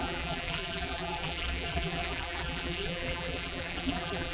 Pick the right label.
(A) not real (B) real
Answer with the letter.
A